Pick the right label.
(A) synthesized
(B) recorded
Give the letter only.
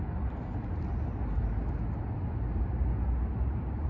B